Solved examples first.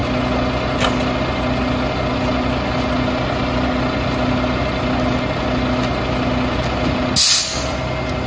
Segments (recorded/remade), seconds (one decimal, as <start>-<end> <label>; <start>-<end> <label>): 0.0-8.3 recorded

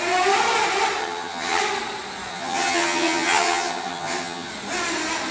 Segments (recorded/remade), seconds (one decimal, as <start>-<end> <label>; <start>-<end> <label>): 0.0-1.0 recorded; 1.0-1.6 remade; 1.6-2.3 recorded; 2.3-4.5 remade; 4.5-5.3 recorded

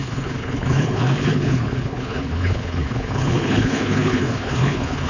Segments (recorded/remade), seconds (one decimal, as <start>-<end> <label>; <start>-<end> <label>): 0.0-5.1 remade